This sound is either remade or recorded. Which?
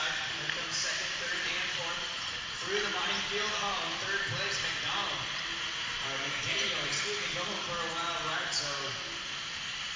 recorded